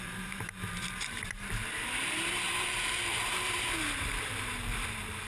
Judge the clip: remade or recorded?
remade